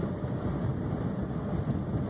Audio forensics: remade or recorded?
recorded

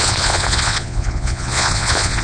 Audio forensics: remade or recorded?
remade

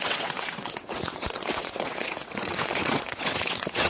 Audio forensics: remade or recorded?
remade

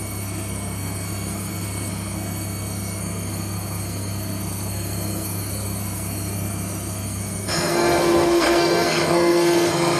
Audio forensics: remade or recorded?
remade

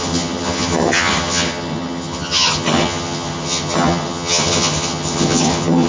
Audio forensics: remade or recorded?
remade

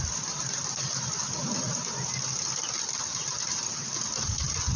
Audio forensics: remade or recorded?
recorded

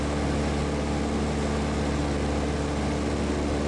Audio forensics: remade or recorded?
recorded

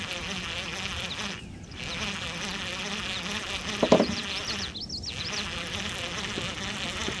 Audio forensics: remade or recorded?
recorded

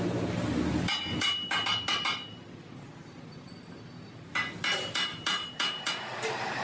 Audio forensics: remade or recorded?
recorded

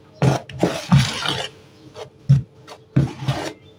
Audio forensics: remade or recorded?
recorded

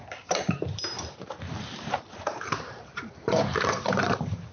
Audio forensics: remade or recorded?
remade